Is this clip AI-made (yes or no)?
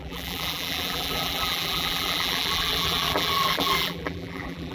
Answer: yes